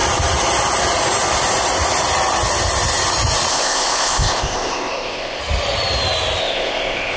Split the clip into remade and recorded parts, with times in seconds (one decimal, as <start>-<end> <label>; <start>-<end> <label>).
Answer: 0.0-3.5 recorded; 3.5-5.4 remade; 5.4-6.4 recorded; 6.4-7.2 remade